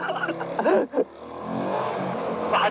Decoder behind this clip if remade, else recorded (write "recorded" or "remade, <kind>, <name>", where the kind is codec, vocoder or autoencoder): recorded